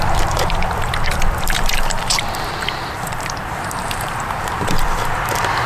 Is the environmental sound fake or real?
fake